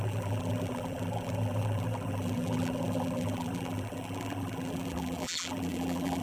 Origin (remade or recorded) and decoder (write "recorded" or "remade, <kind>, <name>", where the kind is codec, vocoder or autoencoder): remade, vocoder, BigVGAN v2